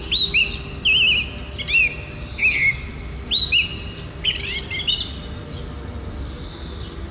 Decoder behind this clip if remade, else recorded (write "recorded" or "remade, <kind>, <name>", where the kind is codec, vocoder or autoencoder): recorded